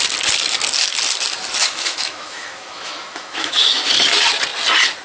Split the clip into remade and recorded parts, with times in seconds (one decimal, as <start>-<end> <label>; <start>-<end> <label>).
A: 0.0-1.6 recorded; 1.6-3.9 remade; 3.9-5.0 recorded